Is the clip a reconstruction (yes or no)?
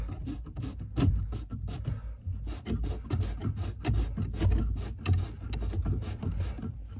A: no